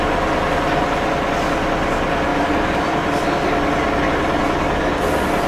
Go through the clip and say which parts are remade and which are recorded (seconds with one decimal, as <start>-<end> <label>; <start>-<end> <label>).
0.0-5.5 recorded